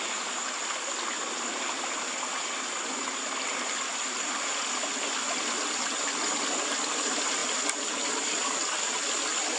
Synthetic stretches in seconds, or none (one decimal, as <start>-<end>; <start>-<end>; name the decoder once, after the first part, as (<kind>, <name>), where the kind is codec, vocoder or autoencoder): none